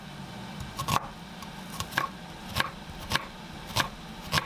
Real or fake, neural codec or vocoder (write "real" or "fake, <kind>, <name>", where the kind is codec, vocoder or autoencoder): real